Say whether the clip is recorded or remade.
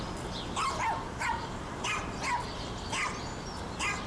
recorded